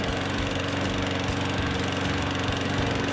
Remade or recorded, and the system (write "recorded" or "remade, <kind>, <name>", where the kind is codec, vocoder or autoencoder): recorded